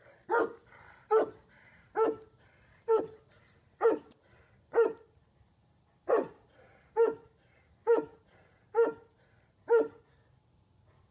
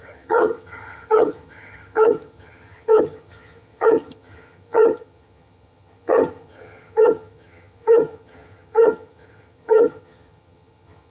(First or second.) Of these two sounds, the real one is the first